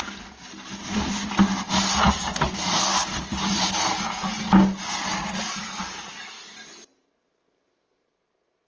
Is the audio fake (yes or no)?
no